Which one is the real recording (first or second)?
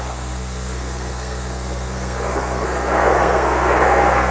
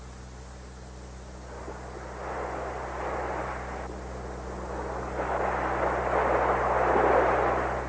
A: second